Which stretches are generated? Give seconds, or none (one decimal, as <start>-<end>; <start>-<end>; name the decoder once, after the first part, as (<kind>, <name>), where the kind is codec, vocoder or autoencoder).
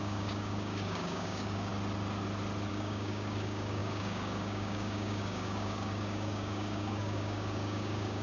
0.0-1.7 (codec, DAC); 2.7-8.2